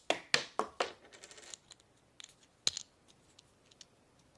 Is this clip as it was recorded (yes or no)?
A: yes